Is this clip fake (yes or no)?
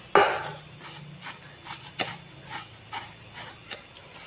no